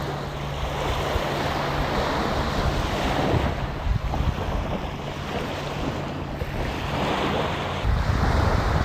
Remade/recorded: recorded